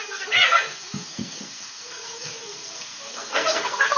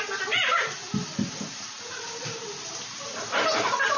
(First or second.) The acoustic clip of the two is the second